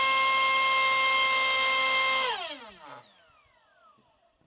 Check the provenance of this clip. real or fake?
real